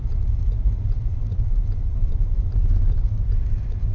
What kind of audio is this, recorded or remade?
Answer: remade